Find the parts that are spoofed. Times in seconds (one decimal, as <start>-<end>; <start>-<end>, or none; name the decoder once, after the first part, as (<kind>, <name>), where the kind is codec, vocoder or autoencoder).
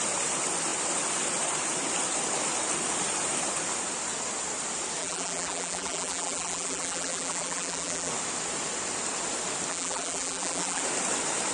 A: 5.0-8.1 (vocoder, BigVGAN v2); 9.7-10.8